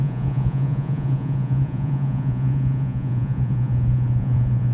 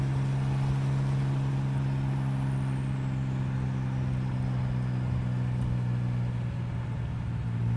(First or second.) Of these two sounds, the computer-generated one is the first